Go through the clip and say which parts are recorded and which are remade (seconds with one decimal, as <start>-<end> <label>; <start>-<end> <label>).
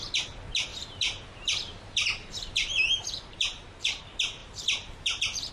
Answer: 0.0-0.7 recorded; 0.7-4.0 remade; 4.0-4.4 recorded; 4.4-5.5 remade